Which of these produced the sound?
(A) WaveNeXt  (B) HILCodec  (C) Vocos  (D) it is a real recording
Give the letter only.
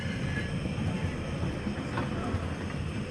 D